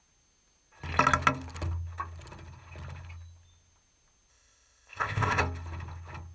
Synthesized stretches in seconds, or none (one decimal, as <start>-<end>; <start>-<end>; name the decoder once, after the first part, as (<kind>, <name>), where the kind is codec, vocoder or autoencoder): 4.3-5.4 (codec, ZipCodec)